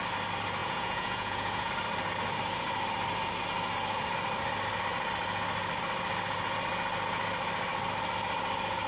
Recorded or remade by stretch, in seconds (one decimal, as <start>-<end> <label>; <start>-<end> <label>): 0.0-0.6 recorded; 0.6-1.7 remade; 1.7-8.9 recorded